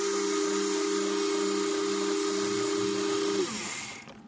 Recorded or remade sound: recorded